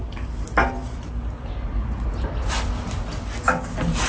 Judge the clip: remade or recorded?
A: recorded